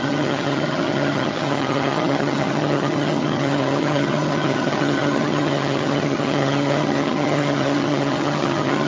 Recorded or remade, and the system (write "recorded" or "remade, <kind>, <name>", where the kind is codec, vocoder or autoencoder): remade, vocoder, HiFi-GAN